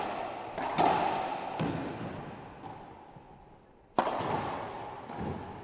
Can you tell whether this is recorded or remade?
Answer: recorded